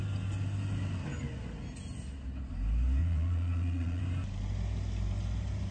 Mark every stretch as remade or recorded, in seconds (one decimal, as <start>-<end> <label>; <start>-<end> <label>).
0.0-3.0 recorded; 3.0-4.0 remade; 4.0-5.7 recorded